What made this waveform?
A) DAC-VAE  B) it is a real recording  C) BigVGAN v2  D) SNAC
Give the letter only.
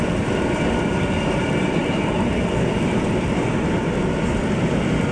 C